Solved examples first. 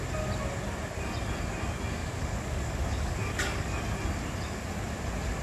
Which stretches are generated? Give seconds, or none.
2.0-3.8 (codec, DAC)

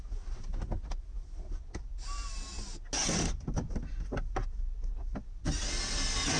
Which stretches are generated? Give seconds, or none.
none

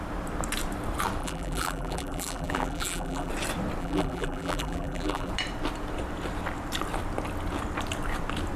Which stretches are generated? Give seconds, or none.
1.2-3.3 (vocoder, BigVGAN v2); 3.8-5.3